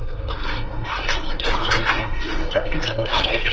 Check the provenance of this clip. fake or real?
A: fake